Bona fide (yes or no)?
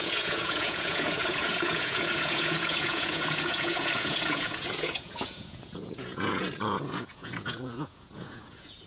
no